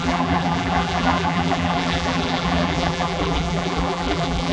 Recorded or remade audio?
remade